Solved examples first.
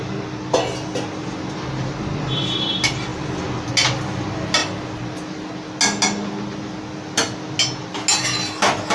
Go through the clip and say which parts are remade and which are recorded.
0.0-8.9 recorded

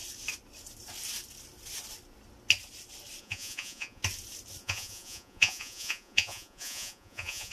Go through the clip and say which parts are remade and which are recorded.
0.0-3.2 recorded; 3.2-4.0 remade; 4.0-4.6 recorded; 4.6-7.5 remade

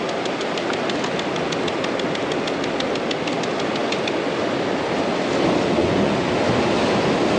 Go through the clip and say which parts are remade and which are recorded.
0.0-5.8 recorded; 5.8-6.3 remade; 6.3-7.4 recorded

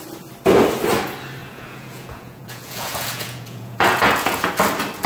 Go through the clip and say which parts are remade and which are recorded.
0.0-1.4 recorded; 1.4-4.5 remade; 4.5-5.1 recorded

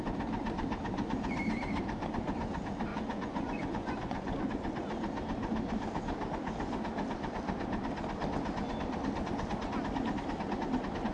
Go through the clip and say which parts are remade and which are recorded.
0.0-2.9 recorded; 2.9-4.4 remade; 4.4-11.1 recorded

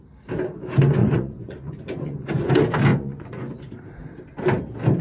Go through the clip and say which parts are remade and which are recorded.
0.0-1.0 recorded; 1.0-2.5 remade; 2.5-2.9 recorded; 2.9-3.5 remade; 3.5-5.0 recorded

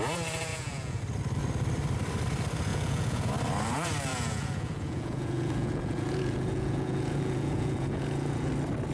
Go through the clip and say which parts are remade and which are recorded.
0.0-0.5 recorded; 0.5-1.0 remade; 1.0-2.7 recorded; 2.7-3.3 remade; 3.3-4.1 recorded; 4.1-8.5 remade; 8.5-8.9 recorded